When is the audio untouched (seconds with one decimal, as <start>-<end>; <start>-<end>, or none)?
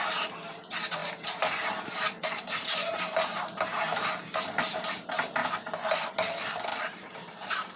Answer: 0.0-1.0; 4.8-6.7